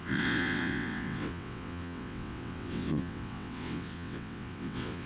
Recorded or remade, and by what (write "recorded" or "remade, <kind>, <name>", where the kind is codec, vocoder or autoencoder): remade, vocoder, WaveNeXt